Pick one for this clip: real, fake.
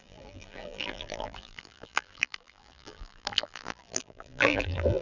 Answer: fake